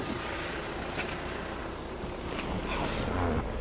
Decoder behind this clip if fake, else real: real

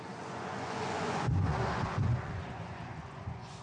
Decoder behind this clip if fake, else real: fake, vocoder, Vocos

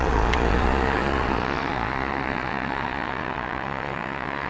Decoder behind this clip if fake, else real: fake, vocoder, Vocos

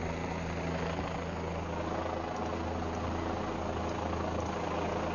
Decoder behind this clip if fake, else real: real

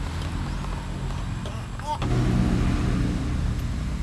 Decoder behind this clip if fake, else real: real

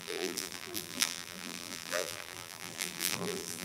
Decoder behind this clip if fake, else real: fake, vocoder, BigVGAN v2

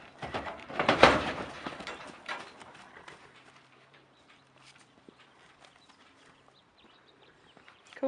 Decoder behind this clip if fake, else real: fake, vocoder, BigVGAN v2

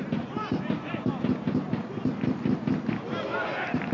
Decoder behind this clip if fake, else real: real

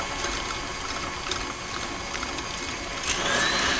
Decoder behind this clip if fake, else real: real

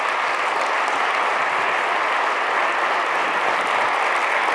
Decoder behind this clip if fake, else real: real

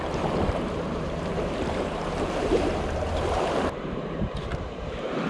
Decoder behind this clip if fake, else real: fake, vocoder, BigVGAN v2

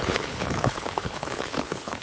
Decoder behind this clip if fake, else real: fake, codec, HILCodec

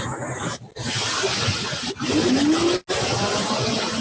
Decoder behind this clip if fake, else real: real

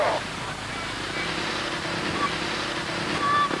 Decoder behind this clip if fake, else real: real